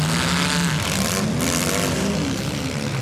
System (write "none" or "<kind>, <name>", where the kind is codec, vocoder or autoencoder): none